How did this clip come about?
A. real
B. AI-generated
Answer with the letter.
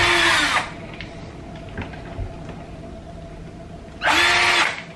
A